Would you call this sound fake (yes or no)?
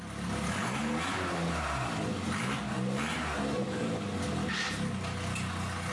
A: no